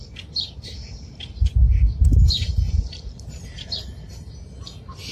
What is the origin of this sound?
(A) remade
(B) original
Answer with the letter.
B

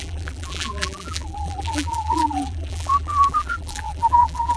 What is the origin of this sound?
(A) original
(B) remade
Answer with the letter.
B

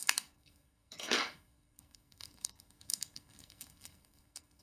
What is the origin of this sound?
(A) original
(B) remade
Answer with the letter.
B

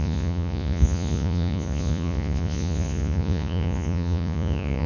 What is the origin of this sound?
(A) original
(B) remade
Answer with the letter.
B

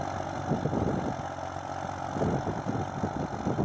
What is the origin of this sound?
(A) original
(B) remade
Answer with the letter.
A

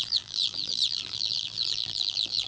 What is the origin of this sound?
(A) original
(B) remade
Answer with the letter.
B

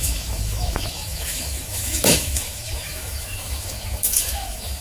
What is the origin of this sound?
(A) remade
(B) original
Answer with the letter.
A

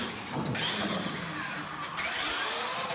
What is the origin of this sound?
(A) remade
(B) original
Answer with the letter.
B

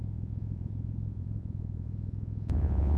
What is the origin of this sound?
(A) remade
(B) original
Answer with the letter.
A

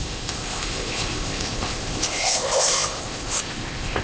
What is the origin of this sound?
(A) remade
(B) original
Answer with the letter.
A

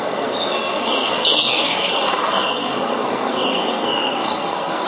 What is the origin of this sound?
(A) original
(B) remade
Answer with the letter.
B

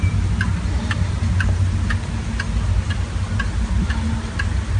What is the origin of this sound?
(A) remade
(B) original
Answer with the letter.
B